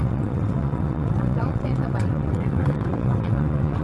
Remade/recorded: remade